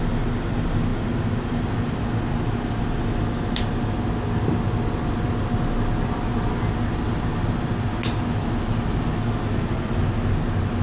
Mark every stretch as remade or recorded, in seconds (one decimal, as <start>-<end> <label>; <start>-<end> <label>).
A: 0.0-10.8 recorded